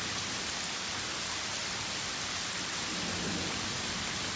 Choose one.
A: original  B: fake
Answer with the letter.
A